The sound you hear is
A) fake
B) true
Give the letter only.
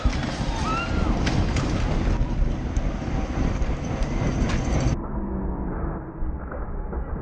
B